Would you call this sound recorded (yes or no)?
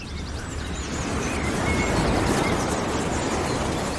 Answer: yes